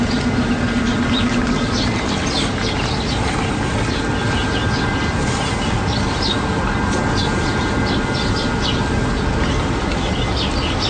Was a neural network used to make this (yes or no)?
no